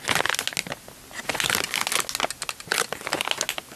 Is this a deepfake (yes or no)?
no